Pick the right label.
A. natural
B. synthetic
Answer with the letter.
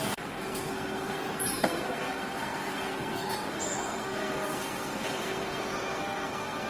B